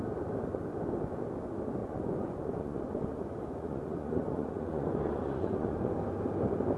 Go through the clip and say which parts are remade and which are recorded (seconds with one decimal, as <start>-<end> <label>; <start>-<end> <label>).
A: 0.0-1.8 recorded; 1.8-5.9 remade; 5.9-6.8 recorded